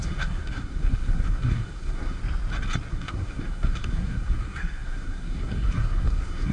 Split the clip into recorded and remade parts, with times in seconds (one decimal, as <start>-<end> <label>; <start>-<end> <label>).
0.0-2.2 remade; 2.2-2.9 recorded; 2.9-6.5 remade